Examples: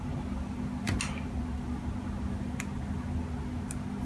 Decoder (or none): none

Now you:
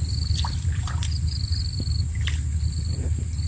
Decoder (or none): none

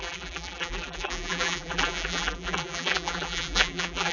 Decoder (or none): vocoder, BigVGAN v2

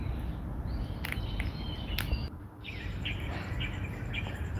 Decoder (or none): none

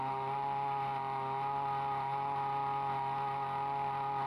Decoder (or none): none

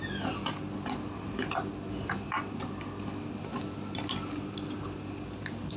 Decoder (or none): none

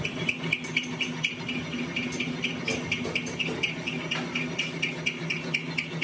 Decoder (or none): none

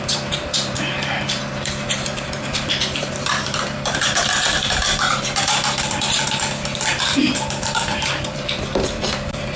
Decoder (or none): vocoder, BigVGAN v2